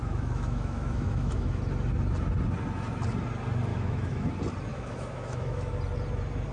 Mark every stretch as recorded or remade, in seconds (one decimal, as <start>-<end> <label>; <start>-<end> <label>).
0.0-1.6 remade; 1.6-3.7 recorded; 3.7-4.3 remade; 4.3-4.7 recorded; 4.7-5.7 remade; 5.7-6.5 recorded